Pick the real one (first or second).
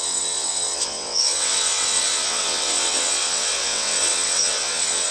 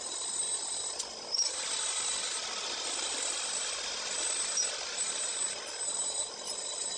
second